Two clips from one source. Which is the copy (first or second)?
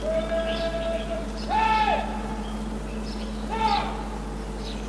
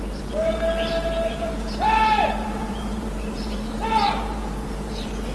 second